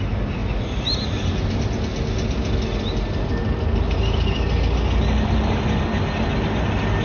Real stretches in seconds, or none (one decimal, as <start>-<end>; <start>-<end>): 0.0-7.0